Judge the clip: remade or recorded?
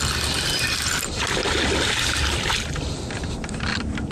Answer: recorded